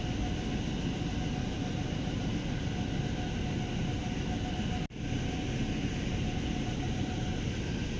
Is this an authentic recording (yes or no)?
yes